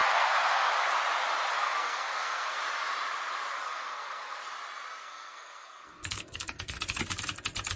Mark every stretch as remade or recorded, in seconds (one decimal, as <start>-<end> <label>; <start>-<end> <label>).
0.0-0.7 remade; 0.7-1.5 recorded; 1.5-2.6 remade; 2.6-3.5 recorded; 3.5-4.4 remade; 4.4-5.0 recorded; 5.0-6.8 remade; 6.8-7.8 recorded